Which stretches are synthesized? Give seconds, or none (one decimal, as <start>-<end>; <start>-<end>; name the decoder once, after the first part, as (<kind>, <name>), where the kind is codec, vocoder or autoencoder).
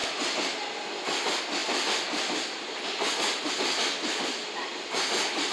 none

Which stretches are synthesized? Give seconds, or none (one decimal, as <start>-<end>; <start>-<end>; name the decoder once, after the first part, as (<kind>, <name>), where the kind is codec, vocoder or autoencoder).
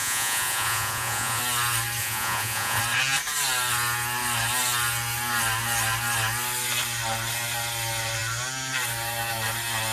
0.0-1.4 (vocoder, Vocos); 2.0-2.8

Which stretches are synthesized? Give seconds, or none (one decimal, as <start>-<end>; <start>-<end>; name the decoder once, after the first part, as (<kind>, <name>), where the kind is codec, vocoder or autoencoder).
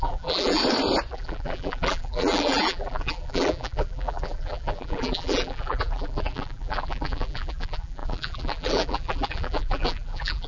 0.0-0.6 (vocoder, BigVGAN v2); 1.1-10.5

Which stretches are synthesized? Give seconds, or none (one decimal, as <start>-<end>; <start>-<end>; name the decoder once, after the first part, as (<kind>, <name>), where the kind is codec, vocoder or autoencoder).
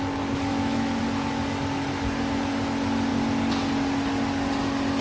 0.5-1.0 (autoencoder, DAC-VAE)